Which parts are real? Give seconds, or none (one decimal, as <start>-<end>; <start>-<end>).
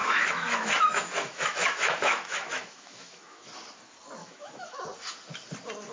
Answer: 3.5-4.2; 4.8-5.9